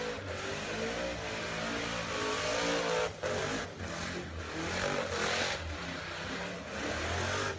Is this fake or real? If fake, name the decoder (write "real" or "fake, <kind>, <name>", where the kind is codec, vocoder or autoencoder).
real